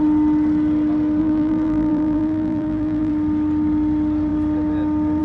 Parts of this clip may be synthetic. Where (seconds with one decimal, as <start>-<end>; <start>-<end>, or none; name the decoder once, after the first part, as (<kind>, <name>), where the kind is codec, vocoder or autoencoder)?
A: 1.2-3.1 (vocoder, BigVGAN v2)